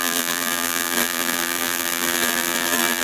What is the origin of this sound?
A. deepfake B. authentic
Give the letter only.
A